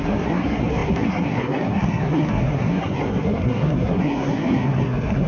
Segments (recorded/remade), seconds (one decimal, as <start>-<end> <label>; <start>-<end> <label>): 0.0-5.3 remade